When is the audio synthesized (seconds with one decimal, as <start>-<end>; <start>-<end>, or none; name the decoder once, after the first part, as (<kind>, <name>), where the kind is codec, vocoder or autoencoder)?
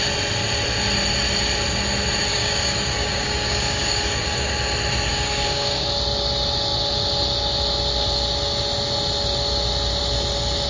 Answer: 2.3-4.5 (codec, DAC); 5.1-5.8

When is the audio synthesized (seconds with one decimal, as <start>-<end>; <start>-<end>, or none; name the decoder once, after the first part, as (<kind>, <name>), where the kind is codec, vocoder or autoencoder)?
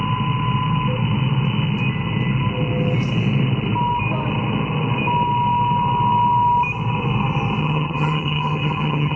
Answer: 7.6-9.2 (vocoder, HiFi-GAN)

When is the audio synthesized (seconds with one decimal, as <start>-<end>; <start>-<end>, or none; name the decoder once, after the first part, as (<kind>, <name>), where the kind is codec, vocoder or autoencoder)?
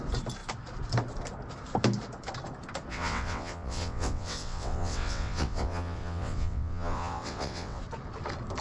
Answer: 2.9-7.8 (vocoder, WaveNeXt)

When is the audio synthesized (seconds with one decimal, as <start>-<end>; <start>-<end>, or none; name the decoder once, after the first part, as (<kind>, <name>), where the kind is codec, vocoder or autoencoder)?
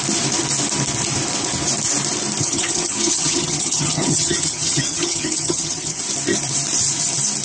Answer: 2.4-6.0 (vocoder, HiFi-GAN)